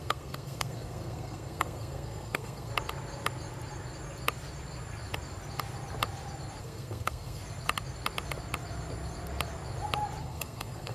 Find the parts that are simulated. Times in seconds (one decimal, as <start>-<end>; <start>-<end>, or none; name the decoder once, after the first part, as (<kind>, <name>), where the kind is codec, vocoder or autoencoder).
0.0-2.7 (codec, SNAC); 6.6-7.4; 10.2-10.9